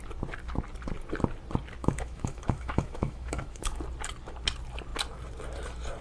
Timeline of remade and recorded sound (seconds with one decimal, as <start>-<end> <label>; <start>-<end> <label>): 0.0-1.8 recorded; 1.8-3.8 remade; 3.8-6.0 recorded